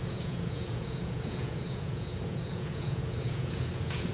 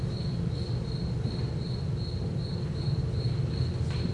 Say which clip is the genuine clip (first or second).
second